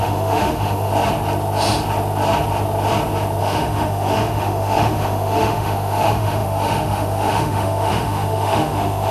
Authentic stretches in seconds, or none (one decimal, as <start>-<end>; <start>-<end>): 0.9-3.4